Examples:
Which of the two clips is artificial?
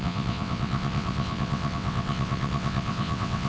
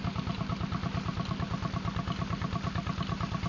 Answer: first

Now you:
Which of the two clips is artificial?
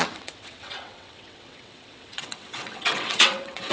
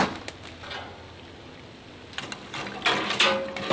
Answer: first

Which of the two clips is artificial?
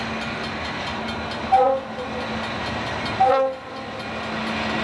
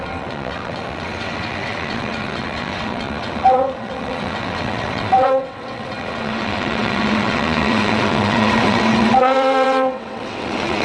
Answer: second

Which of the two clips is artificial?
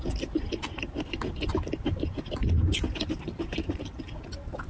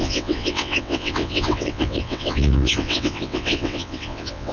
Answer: second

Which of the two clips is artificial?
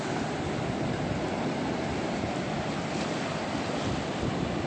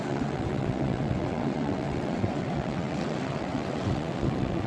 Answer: second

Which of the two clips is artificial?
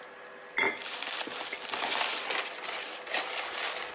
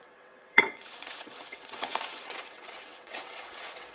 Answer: second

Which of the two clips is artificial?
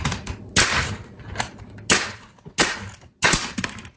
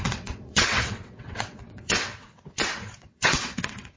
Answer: second